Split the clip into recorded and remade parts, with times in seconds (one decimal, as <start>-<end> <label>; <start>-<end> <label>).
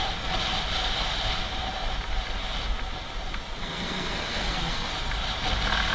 0.0-3.6 recorded; 3.6-4.9 remade; 4.9-5.9 recorded